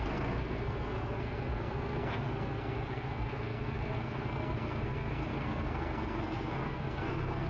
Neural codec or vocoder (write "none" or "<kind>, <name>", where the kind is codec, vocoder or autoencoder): codec, SNAC